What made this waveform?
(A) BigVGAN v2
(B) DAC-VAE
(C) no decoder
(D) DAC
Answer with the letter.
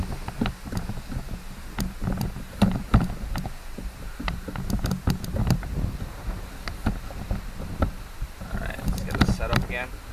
C